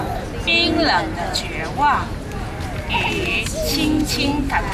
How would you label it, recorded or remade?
recorded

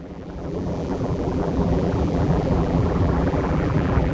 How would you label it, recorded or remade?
remade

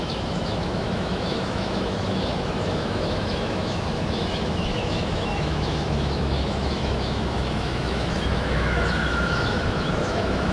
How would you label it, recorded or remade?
remade